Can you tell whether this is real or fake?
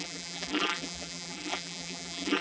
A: fake